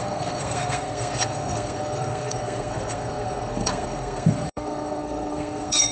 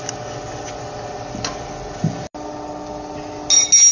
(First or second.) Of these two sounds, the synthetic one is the first